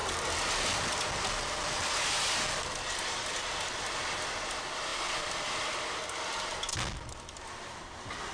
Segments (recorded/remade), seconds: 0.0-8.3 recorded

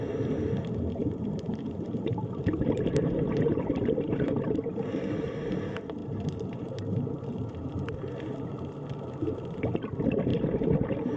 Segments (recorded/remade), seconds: 0.0-1.0 recorded; 1.0-5.6 remade; 5.6-6.0 recorded; 6.0-7.7 remade; 7.7-10.3 recorded; 10.3-11.2 remade

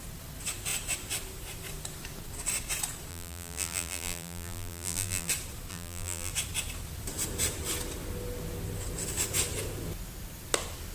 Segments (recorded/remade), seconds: 0.0-3.1 recorded; 3.1-5.3 remade; 5.3-5.7 recorded; 5.7-6.3 remade; 6.3-10.9 recorded

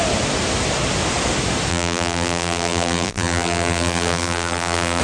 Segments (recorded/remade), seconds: 0.0-1.7 recorded; 1.7-5.0 remade

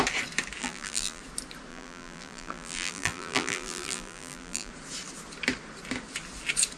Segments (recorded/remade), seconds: 0.0-0.6 recorded; 0.6-1.2 remade; 1.2-1.7 recorded; 1.7-4.7 remade; 4.7-6.8 recorded